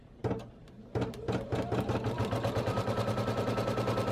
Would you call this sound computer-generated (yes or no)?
no